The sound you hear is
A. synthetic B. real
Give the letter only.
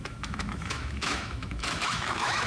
A